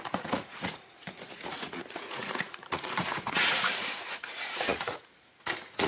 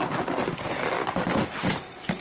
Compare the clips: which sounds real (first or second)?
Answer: second